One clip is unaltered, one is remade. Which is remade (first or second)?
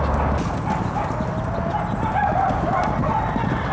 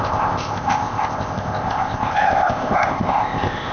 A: second